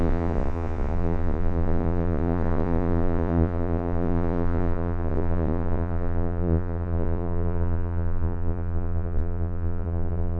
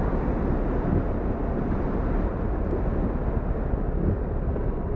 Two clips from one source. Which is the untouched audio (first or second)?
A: second